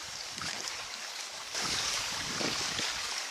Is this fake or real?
fake